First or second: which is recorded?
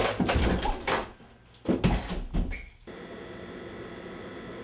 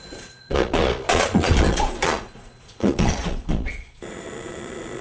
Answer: first